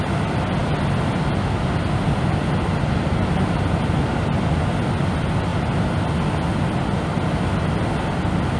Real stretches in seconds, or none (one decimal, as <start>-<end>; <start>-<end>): 0.0-8.6